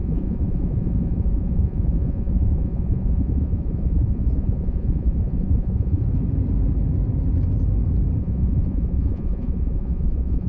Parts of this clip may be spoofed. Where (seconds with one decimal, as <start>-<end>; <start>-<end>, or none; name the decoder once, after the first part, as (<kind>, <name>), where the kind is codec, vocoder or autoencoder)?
0.0-6.0 (vocoder, Vocos); 8.2-10.5